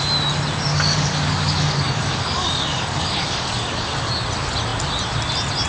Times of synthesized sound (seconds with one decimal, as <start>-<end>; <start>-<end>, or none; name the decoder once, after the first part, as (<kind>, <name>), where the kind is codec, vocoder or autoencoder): 0.7-4.1 (codec, DAC)